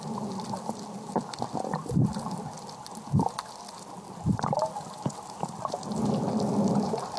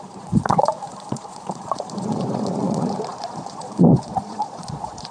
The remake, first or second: second